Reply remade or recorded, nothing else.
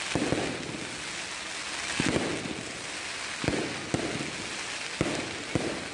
recorded